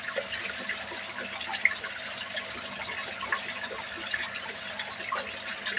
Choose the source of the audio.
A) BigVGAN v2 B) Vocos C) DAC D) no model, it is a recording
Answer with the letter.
D